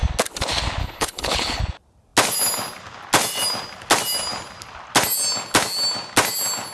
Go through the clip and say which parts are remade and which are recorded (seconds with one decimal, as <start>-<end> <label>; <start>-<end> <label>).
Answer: 0.0-0.8 recorded; 0.8-1.6 remade; 1.6-6.7 recorded

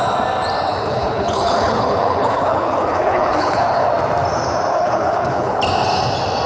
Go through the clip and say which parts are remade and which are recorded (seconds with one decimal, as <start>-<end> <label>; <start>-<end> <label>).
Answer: 0.0-0.7 recorded; 0.7-3.9 remade; 3.9-4.7 recorded; 4.7-5.6 remade; 5.6-6.5 recorded

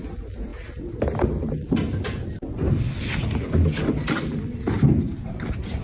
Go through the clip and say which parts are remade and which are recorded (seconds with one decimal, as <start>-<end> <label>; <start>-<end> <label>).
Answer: 0.0-5.8 recorded